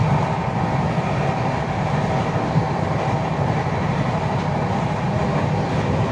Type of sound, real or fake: real